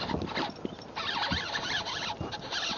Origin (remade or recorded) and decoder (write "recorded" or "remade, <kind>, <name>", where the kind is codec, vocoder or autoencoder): recorded